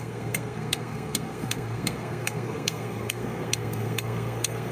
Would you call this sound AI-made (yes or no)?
yes